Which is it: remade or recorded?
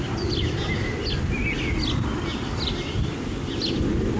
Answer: recorded